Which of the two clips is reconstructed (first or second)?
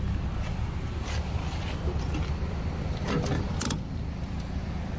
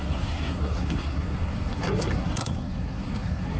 second